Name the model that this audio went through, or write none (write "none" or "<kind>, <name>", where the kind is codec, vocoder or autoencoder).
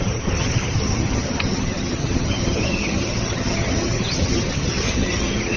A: vocoder, HiFi-GAN